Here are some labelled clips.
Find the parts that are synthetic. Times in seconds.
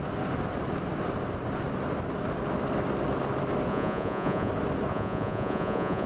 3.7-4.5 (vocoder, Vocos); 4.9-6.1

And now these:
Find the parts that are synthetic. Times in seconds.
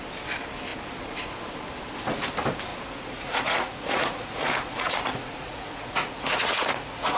2.7-7.2 (vocoder, Vocos)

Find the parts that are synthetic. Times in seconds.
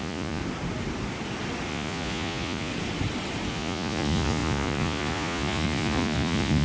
0.0-0.4 (vocoder, Vocos); 1.7-2.7; 3.5-6.6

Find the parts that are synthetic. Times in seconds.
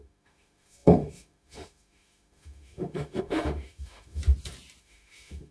0.0-4.2 (autoencoder, DAC-VAE); 4.8-5.5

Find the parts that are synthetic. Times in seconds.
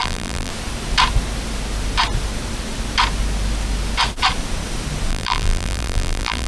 0.0-0.5 (vocoder, BigVGAN v2); 5.1-6.5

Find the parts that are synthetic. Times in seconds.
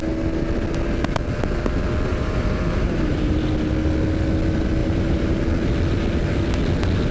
2.1-3.4 (vocoder, BigVGAN v2); 4.8-5.4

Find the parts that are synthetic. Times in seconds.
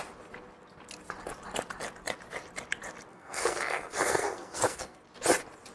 3.1-5.0 (codec, SNAC)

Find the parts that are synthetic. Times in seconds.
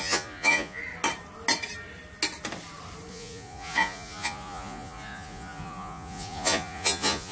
0.0-0.8 (vocoder, Vocos); 3.1-7.3